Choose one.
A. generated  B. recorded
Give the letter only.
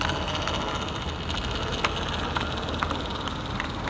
B